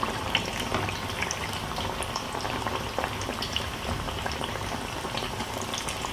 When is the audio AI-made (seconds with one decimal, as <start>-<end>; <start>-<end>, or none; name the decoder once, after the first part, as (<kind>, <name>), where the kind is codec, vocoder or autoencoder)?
none